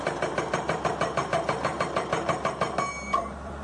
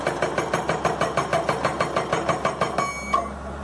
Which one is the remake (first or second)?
first